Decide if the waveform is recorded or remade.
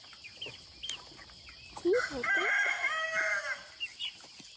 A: recorded